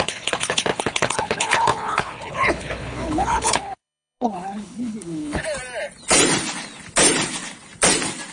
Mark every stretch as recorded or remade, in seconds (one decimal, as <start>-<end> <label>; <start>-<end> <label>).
0.0-5.4 remade; 5.4-8.3 recorded